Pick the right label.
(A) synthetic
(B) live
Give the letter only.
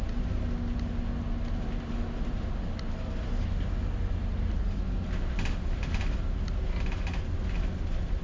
B